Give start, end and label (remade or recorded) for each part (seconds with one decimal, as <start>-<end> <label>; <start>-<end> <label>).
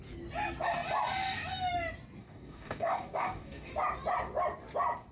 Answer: 0.0-2.2 recorded; 2.2-3.7 remade; 3.7-5.1 recorded